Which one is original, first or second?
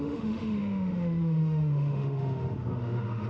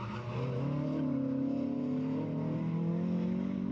second